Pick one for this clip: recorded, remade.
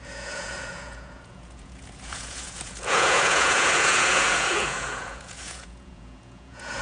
remade